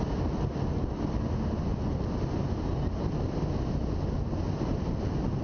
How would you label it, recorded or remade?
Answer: recorded